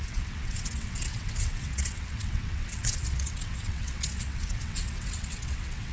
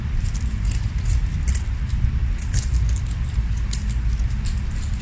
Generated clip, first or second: first